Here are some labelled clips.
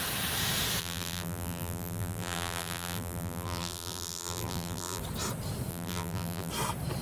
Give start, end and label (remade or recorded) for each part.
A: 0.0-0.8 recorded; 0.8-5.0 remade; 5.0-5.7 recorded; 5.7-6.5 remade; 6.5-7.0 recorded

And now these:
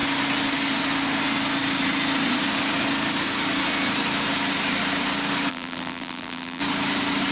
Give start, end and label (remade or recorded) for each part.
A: 0.0-5.5 recorded; 5.5-6.6 remade; 6.6-7.3 recorded

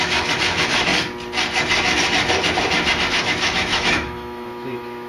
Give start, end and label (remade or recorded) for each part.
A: 0.0-0.9 remade; 0.9-3.1 recorded; 3.1-5.1 remade

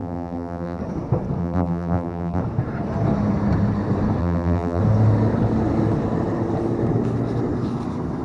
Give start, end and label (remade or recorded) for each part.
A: 0.0-0.8 remade; 0.8-1.4 recorded; 1.4-2.4 remade; 2.4-4.2 recorded; 4.2-4.8 remade; 4.8-8.2 recorded

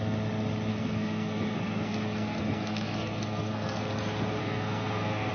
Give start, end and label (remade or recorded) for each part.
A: 0.0-0.7 recorded; 0.7-3.9 remade; 3.9-4.4 recorded; 4.4-5.3 remade

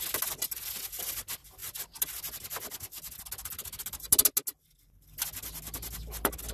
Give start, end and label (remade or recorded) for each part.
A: 0.0-6.5 recorded

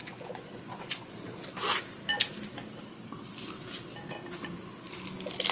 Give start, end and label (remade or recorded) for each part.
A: 0.0-1.1 remade; 1.1-5.5 recorded